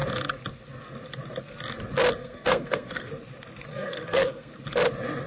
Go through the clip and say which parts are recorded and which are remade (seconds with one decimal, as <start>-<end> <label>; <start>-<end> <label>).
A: 0.0-2.2 recorded; 2.2-3.1 remade; 3.1-3.7 recorded; 3.7-4.5 remade; 4.5-5.3 recorded